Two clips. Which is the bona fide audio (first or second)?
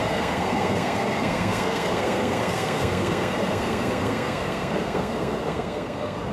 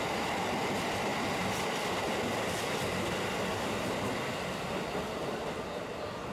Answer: second